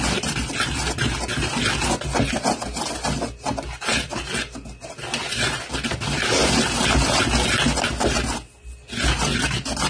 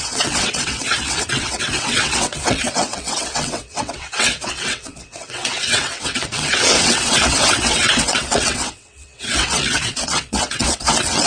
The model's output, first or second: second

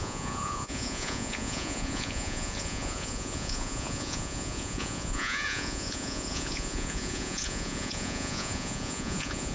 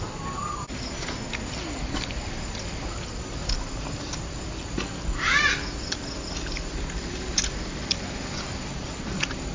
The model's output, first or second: first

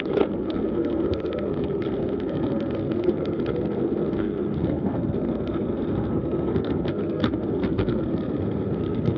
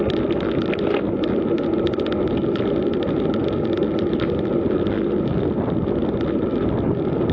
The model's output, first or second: first